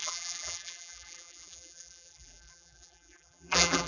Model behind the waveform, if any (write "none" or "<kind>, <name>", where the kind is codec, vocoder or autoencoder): vocoder, BigVGAN v2